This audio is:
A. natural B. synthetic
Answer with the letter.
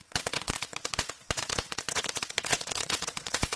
B